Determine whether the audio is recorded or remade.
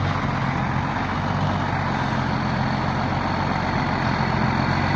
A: recorded